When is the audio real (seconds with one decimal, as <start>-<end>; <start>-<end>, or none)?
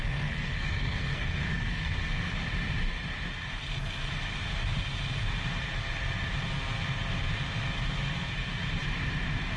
2.3-9.6